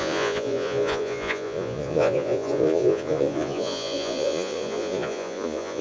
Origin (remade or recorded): remade